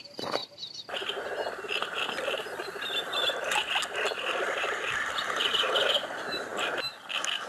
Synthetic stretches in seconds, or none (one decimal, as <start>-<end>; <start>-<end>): 0.0-6.5